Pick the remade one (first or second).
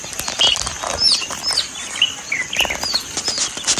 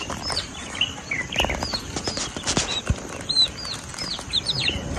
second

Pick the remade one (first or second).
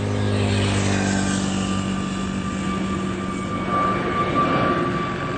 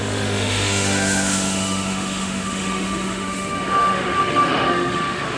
second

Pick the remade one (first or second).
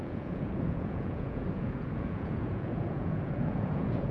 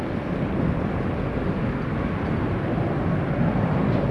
first